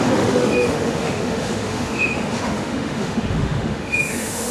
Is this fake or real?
fake